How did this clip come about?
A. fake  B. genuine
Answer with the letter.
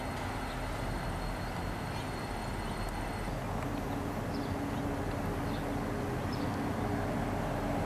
B